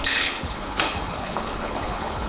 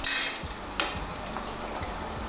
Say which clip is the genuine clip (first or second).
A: second